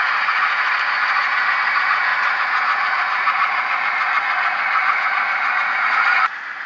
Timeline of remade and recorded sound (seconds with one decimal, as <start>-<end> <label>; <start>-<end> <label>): 0.0-6.7 remade